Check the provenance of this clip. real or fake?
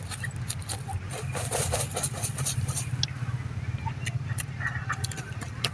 real